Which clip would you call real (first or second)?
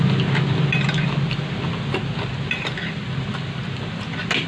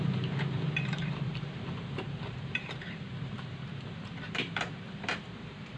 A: first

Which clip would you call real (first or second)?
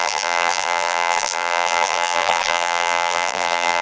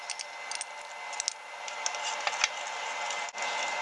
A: second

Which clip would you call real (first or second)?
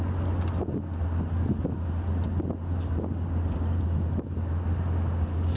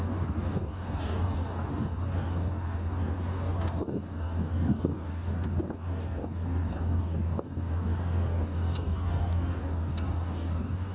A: first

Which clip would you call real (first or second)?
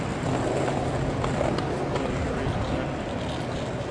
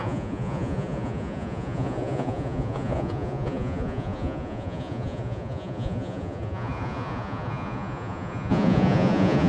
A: first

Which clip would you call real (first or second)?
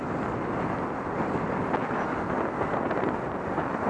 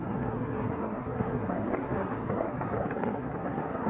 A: first